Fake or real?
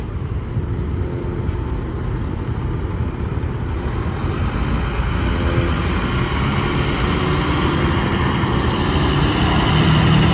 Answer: real